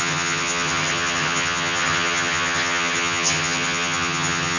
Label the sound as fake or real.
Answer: fake